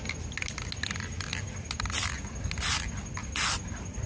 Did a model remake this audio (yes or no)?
no